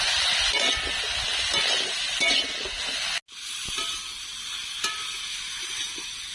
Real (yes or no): yes